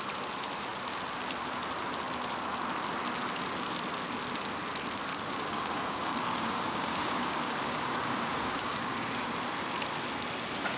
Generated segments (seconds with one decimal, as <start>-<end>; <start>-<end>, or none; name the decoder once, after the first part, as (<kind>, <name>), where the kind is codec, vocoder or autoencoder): 5.1-9.3 (codec, DAC)